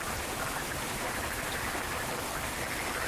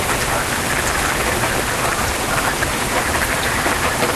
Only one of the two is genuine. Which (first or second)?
second